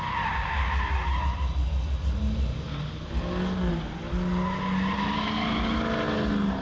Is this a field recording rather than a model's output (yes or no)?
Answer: yes